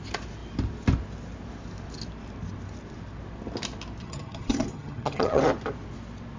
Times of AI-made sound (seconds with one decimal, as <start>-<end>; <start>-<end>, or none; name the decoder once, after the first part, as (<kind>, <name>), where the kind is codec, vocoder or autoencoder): 4.0-5.4 (vocoder, HiFi-GAN)